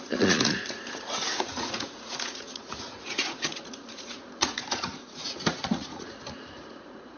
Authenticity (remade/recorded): remade